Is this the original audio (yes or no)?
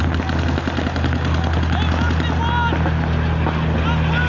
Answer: yes